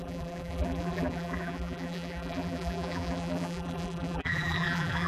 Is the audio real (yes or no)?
no